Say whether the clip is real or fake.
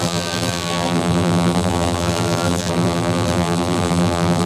fake